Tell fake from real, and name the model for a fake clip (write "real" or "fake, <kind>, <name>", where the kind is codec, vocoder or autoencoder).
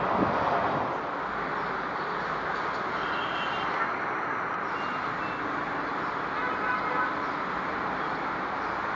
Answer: real